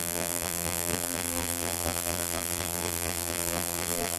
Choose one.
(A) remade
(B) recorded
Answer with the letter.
A